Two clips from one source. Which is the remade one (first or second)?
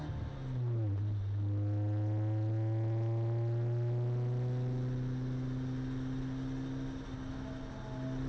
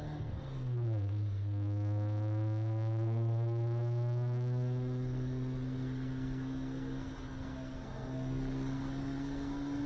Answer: second